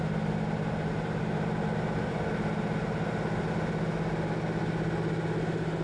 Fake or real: real